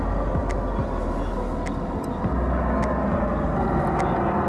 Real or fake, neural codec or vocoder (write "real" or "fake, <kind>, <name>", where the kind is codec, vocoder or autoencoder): real